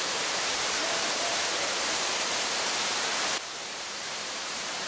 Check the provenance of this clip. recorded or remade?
remade